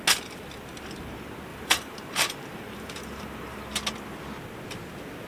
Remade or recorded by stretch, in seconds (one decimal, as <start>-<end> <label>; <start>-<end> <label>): 0.0-1.5 recorded; 1.5-3.7 remade; 3.7-5.3 recorded